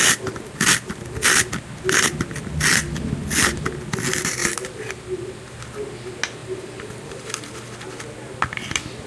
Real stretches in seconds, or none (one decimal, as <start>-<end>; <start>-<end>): 0.0-6.4; 7.3-9.1